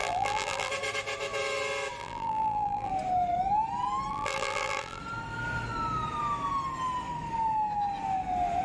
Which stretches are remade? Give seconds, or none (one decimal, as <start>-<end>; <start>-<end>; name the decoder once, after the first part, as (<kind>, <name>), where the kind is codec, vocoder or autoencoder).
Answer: 0.0-0.7 (vocoder, BigVGAN v2); 2.0-2.9; 4.1-5.0